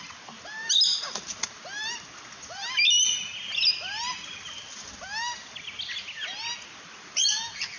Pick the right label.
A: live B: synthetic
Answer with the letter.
A